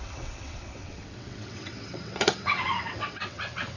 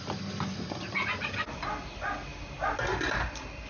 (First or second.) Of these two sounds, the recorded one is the second